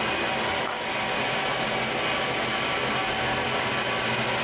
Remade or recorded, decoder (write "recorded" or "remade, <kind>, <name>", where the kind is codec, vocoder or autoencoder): recorded